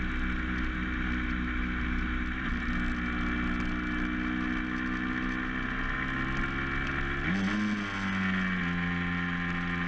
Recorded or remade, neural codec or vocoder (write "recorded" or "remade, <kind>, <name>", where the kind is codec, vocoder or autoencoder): recorded